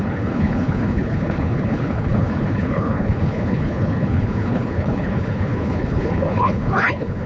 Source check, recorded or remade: remade